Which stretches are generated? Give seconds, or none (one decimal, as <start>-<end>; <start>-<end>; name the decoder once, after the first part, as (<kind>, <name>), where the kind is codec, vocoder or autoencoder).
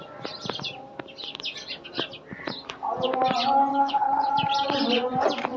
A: 3.7-4.3 (codec, HILCodec)